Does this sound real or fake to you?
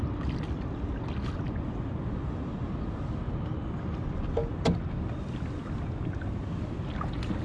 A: real